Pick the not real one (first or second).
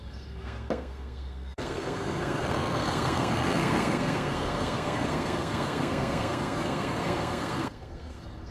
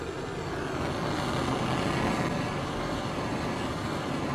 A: first